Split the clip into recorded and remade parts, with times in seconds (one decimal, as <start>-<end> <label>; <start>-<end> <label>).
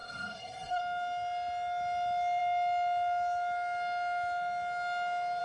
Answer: 0.0-0.8 remade; 0.8-5.4 recorded